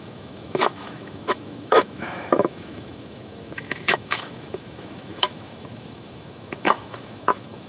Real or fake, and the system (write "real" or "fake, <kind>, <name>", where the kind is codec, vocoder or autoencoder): fake, autoencoder, DAC-VAE